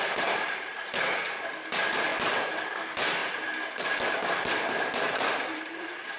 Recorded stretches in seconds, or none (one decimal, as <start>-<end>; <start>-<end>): 0.0-6.2